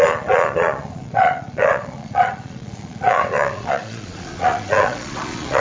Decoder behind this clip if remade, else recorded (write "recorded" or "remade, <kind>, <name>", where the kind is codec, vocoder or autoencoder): remade, vocoder, Vocos